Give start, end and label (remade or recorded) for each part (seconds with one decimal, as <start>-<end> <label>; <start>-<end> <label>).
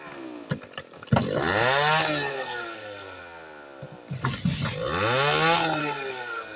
0.0-2.3 recorded; 2.3-3.2 remade; 3.2-5.8 recorded; 5.8-6.6 remade